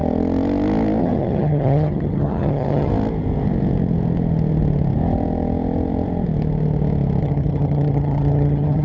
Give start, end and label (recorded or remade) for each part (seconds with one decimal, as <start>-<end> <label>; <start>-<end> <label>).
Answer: 0.0-1.0 recorded; 1.0-2.9 remade; 2.9-7.2 recorded; 7.2-8.8 remade